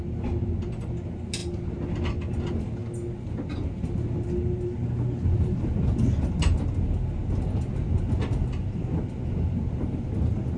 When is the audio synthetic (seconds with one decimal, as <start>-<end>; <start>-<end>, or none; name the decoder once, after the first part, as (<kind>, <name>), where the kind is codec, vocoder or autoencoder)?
none